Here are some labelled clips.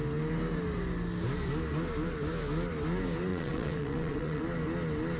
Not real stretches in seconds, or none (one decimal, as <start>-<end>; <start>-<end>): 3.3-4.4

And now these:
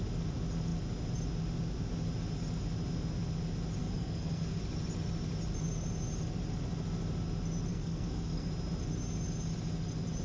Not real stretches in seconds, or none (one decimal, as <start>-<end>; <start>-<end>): 3.8-4.6; 7.7-8.5

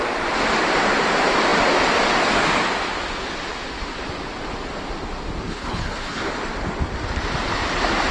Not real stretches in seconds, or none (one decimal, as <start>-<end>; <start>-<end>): 5.5-6.3

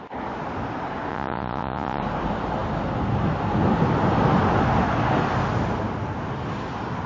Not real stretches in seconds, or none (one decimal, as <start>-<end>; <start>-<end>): 1.1-2.0

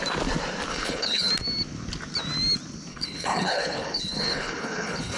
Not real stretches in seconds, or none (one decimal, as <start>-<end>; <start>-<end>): 0.7-1.3; 2.9-5.2